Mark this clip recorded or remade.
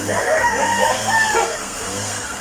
remade